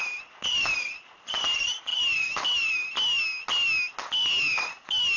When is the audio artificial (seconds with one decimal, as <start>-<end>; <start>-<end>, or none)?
none